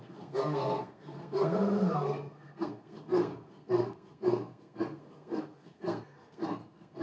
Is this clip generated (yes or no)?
yes